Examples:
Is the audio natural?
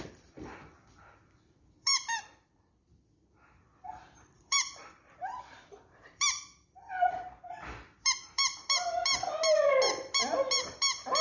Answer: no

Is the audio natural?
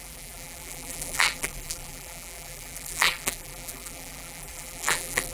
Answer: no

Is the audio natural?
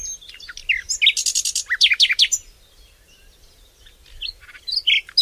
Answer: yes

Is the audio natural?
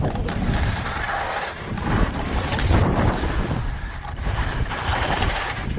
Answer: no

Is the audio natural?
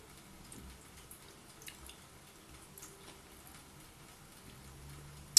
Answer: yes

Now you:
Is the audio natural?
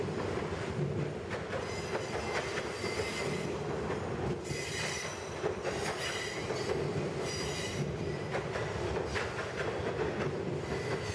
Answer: yes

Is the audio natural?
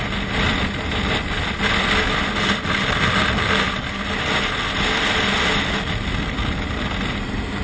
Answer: yes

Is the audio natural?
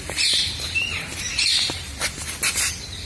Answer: no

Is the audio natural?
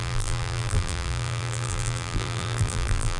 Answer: no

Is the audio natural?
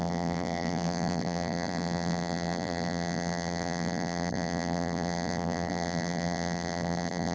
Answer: no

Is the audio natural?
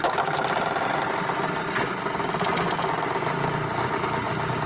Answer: yes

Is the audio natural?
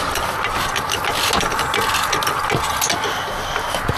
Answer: yes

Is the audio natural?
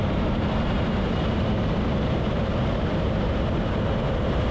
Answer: no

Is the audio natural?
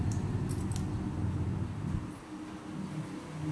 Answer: yes